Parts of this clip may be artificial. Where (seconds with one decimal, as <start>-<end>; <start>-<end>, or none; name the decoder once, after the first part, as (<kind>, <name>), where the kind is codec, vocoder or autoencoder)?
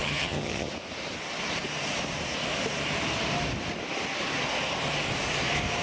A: 0.0-0.7 (vocoder, HiFi-GAN)